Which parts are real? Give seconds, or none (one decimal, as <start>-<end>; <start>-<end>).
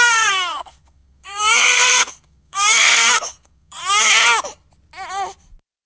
3.8-5.9